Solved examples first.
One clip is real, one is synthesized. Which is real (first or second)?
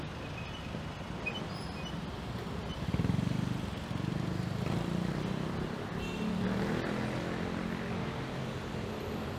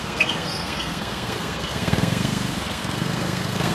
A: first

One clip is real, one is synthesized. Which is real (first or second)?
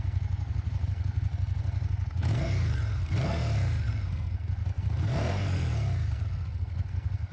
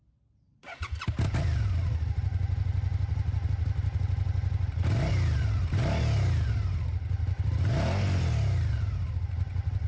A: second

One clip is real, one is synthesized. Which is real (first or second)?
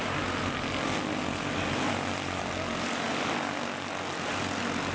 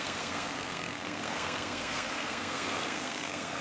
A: first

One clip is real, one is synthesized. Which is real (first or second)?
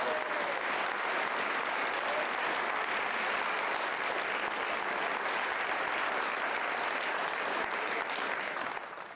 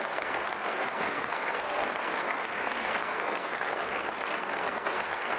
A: first